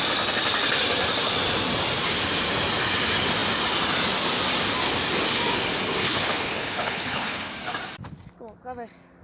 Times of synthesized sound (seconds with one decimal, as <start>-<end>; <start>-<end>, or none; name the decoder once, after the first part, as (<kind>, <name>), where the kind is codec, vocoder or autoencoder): 6.0-7.5 (codec, HILCodec)